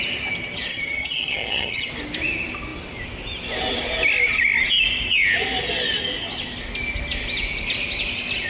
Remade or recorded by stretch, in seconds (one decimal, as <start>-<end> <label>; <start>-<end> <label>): 0.0-0.7 recorded; 0.7-1.9 remade; 1.9-8.5 recorded